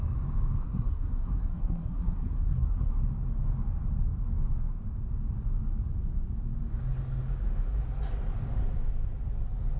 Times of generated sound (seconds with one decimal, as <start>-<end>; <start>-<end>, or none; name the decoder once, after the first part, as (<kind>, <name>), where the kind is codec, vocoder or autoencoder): 0.6-2.9 (codec, SNAC)